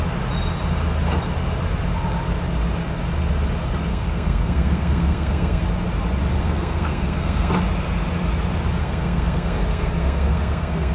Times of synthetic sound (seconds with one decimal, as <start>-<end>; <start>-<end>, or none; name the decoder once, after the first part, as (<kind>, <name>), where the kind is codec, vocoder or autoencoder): 3.9-5.6 (codec, SNAC); 6.4-7.5; 8.8-10.9